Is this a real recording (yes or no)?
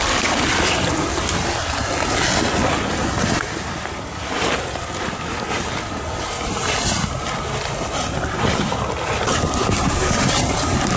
yes